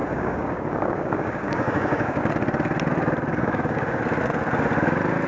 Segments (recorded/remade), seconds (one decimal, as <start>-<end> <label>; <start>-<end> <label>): 0.0-2.3 remade; 2.3-3.3 recorded; 3.3-4.0 remade; 4.0-5.3 recorded